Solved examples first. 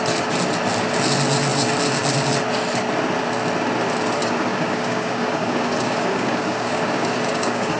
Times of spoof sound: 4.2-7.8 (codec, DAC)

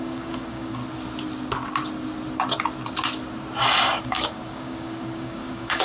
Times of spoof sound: 0.0-0.8 (codec, DAC); 4.0-5.8

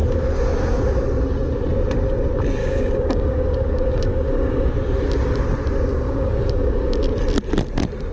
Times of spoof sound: 2.6-4.7 (codec, DAC); 5.9-7.0

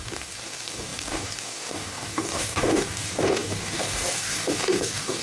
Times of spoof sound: 0.0-5.2 (codec, DAC)

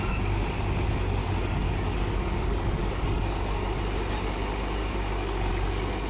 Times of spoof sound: 1.2-3.8 (codec, DAC); 4.8-5.5

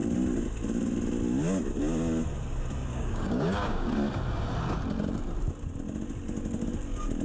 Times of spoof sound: 2.9-3.9 (codec, DAC)

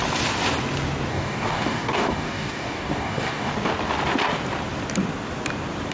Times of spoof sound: 1.1-3.5 (codec, DAC)

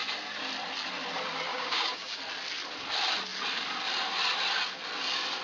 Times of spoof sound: 1.5-2.2 (codec, DAC)